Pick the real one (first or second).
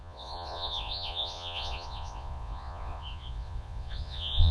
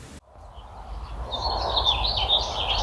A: second